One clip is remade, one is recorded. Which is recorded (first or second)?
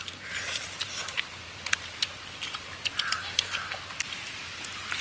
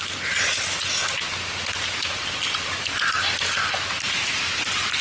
second